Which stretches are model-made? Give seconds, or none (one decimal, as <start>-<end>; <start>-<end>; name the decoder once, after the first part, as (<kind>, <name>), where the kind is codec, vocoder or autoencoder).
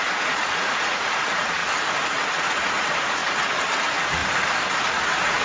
0.0-1.6 (vocoder, Vocos); 2.4-3.2; 3.8-4.2; 4.9-5.4